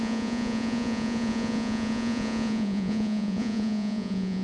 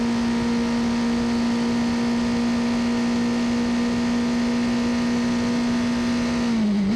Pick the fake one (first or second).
first